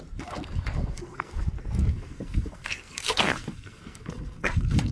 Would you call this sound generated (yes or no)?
yes